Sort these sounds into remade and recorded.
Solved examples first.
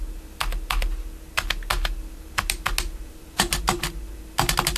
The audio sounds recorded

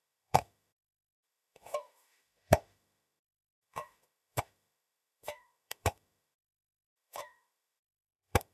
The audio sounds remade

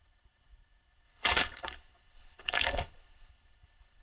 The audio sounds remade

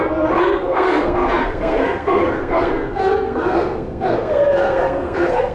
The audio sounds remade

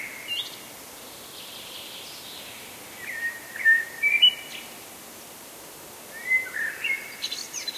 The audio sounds remade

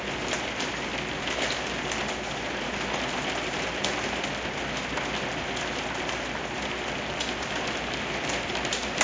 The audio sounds recorded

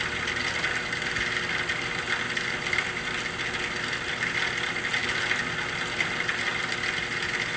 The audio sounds recorded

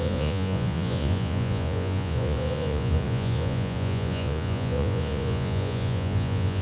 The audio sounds remade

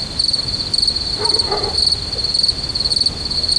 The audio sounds recorded